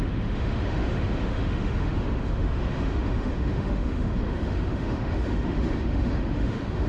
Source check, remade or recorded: remade